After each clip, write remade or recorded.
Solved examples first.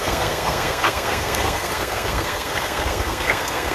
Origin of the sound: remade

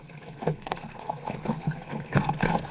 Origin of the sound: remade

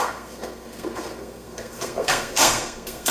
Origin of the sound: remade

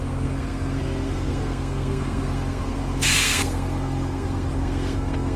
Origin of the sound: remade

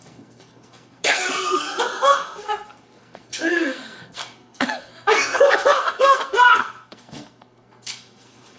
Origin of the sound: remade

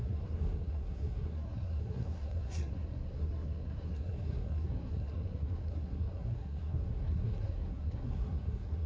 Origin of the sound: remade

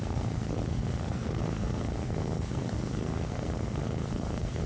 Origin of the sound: remade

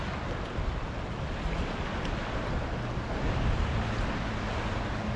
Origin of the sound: recorded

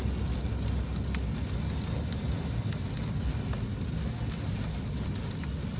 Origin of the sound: recorded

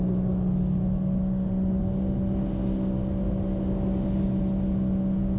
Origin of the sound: recorded